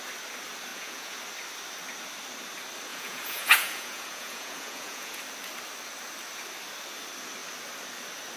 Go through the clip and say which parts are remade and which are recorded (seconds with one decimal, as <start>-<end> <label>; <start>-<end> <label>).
0.0-0.7 recorded; 0.7-1.2 remade; 1.2-2.9 recorded; 2.9-5.2 remade; 5.2-8.4 recorded